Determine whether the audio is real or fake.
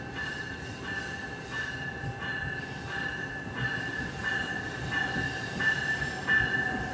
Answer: real